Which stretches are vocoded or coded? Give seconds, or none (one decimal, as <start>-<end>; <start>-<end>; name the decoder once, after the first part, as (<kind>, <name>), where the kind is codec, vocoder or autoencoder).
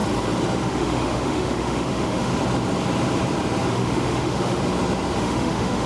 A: 0.6-2.3 (autoencoder, DAC-VAE); 3.7-4.6; 5.2-5.9